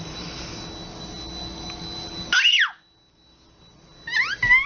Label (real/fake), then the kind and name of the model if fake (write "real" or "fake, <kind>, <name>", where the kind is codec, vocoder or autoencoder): real